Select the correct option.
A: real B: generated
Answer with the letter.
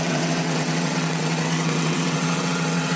B